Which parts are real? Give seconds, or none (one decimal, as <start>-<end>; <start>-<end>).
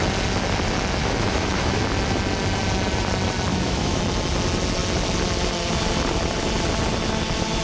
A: 0.0-1.0; 1.8-3.5; 4.0-7.6